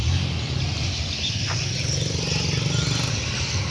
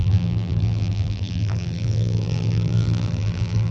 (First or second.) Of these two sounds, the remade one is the second